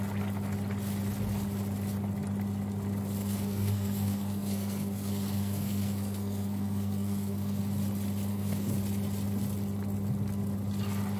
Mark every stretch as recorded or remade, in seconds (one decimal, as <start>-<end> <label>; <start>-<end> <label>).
0.0-3.2 recorded; 3.2-7.6 remade; 7.6-8.3 recorded; 8.3-8.8 remade; 8.8-11.2 recorded